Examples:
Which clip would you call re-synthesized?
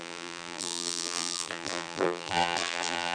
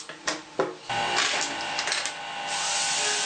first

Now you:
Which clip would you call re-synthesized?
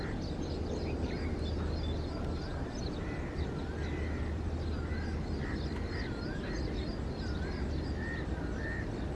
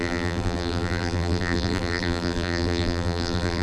second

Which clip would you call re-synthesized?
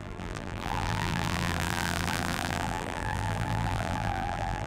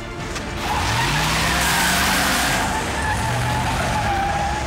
first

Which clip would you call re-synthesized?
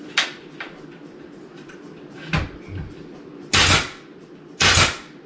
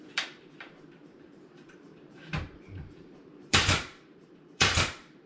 second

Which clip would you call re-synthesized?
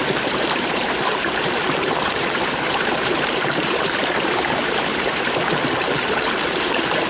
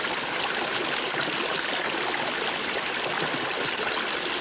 first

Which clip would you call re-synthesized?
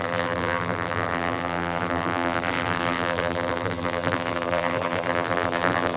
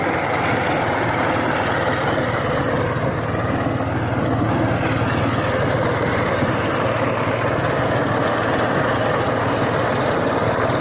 first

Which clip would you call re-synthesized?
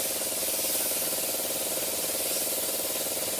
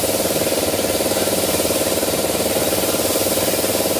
second